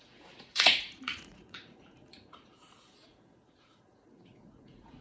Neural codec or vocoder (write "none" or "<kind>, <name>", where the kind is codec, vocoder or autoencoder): vocoder, Vocos